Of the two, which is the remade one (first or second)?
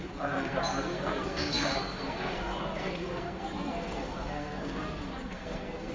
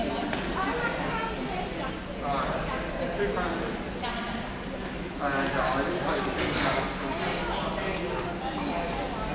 first